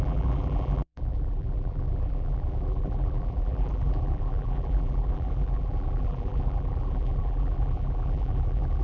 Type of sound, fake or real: fake